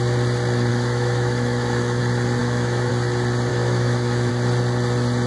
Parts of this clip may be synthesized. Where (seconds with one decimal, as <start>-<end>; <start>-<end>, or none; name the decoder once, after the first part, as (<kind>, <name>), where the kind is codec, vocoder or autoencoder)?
0.7-2.0 (autoencoder, DAC-VAE); 2.4-2.9; 3.5-4.3